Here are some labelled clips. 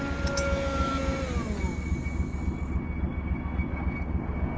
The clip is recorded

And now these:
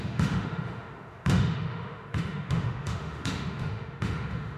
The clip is remade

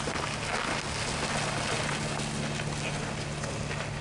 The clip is recorded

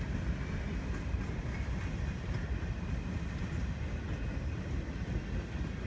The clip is recorded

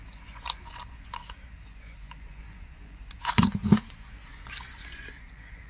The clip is remade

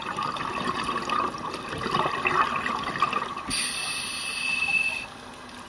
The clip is recorded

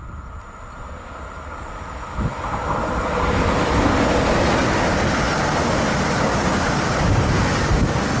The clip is recorded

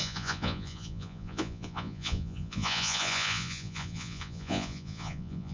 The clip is remade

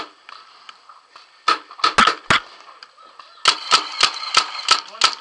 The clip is recorded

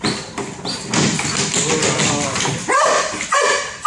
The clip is recorded